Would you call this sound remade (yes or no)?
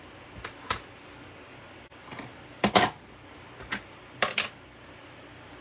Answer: no